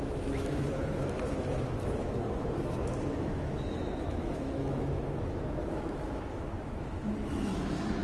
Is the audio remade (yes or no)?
yes